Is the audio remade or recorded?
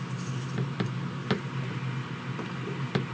recorded